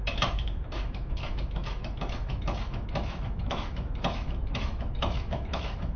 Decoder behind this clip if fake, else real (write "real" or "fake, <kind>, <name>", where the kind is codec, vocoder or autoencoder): fake, autoencoder, DAC-VAE